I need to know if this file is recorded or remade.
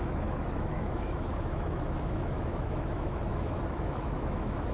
remade